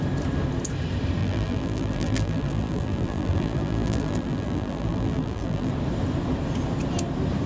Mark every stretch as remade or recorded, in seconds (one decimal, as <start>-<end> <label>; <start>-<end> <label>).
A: 0.0-1.2 recorded; 1.2-5.7 remade; 5.7-7.5 recorded